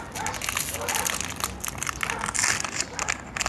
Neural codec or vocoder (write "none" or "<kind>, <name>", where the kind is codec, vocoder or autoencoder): none